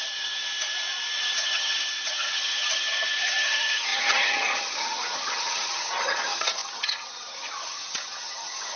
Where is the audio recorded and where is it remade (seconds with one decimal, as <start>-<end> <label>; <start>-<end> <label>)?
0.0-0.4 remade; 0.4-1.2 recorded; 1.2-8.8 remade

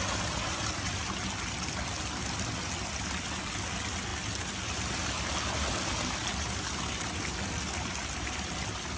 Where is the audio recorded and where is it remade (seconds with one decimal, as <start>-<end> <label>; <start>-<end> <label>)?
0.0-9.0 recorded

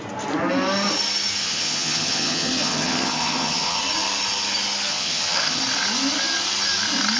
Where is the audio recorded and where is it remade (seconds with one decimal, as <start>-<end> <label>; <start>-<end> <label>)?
0.0-1.4 recorded; 1.4-3.8 remade; 3.8-4.9 recorded; 4.9-5.6 remade; 5.6-7.2 recorded

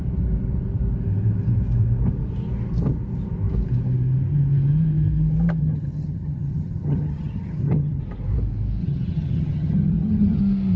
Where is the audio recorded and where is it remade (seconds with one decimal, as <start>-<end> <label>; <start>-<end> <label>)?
0.0-5.6 recorded; 5.6-8.0 remade; 8.0-8.8 recorded; 8.8-10.4 remade; 10.4-10.8 recorded

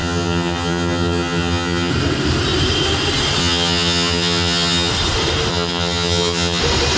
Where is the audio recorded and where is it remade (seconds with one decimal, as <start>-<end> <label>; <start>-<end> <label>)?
0.0-1.9 remade; 1.9-3.4 recorded; 3.4-4.9 remade; 4.9-5.5 recorded; 5.5-6.6 remade; 6.6-7.0 recorded

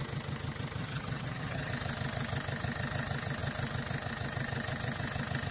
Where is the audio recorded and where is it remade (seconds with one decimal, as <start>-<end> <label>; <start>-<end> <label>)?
0.0-0.8 recorded; 0.8-1.7 remade; 1.7-5.5 recorded